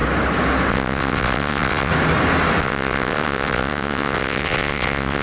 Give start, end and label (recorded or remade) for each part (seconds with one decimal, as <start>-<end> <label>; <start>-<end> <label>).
0.0-0.7 recorded; 0.7-1.9 remade; 1.9-2.6 recorded; 2.6-5.2 remade